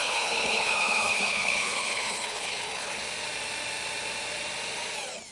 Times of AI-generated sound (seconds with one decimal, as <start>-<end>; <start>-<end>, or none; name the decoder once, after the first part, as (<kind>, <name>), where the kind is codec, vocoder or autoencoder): 0.0-3.0 (codec, HILCodec)